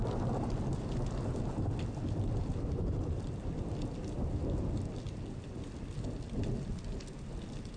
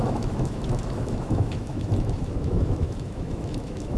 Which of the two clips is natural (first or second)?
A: first